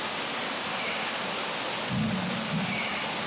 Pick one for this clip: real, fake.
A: real